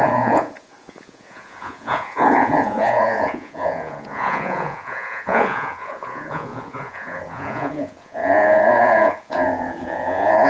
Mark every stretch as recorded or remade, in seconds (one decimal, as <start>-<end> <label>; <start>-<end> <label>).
0.0-10.5 remade